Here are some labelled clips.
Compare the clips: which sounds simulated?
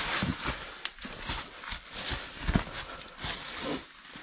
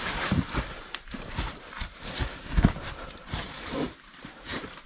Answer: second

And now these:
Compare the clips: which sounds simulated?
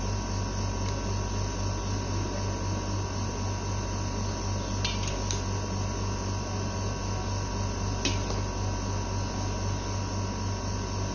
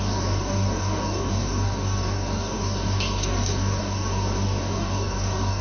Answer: second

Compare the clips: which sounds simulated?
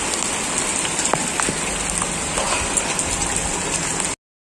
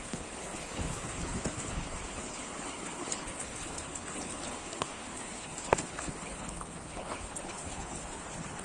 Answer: second